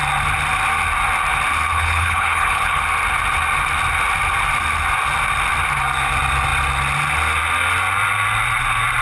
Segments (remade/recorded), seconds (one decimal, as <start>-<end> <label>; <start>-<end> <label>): 0.0-1.7 recorded; 1.7-2.8 remade; 2.8-9.0 recorded